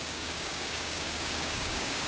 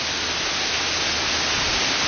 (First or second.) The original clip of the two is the second